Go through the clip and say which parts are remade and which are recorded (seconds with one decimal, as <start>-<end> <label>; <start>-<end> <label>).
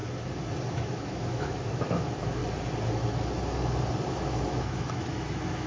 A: 0.0-0.7 recorded; 0.7-2.4 remade; 2.4-4.1 recorded; 4.1-5.7 remade